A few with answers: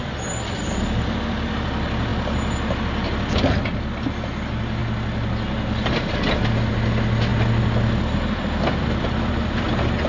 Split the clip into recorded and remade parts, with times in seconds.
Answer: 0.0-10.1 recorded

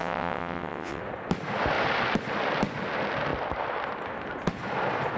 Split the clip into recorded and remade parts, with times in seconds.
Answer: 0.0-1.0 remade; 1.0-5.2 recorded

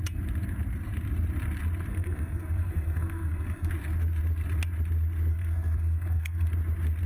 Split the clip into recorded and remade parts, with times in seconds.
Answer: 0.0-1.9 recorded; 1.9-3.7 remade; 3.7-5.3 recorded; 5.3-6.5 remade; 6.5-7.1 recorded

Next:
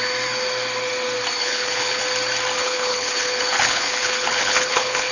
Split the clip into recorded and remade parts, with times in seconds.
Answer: 0.0-1.4 recorded; 1.4-2.0 remade; 2.0-2.6 recorded; 2.6-5.1 remade

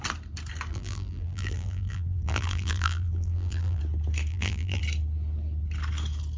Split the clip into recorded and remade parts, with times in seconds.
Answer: 0.0-0.7 recorded; 0.7-3.8 remade; 3.8-4.3 recorded; 4.3-4.8 remade; 4.8-6.4 recorded

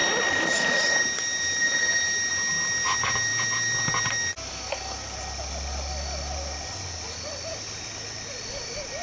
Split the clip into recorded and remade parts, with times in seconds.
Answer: 0.0-9.0 recorded